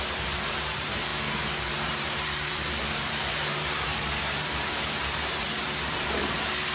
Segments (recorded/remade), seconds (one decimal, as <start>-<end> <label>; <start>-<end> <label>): 0.0-1.1 remade; 1.1-1.7 recorded; 1.7-6.7 remade